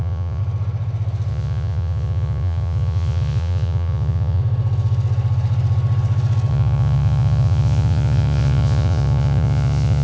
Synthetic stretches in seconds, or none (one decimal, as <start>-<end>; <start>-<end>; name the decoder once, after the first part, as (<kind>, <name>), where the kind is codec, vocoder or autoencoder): 0.0-0.4 (vocoder, Vocos); 1.3-4.4; 6.5-10.0